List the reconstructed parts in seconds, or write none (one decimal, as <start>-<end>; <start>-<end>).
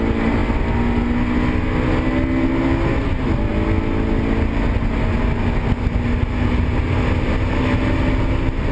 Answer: none